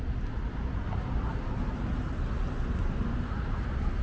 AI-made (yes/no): no